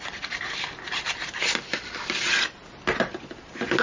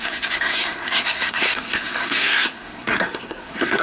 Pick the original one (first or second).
first